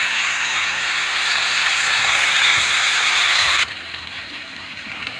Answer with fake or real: fake